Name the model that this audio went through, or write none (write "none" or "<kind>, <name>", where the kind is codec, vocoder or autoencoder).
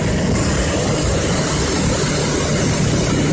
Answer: none